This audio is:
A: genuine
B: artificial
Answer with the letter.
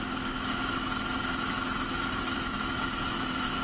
B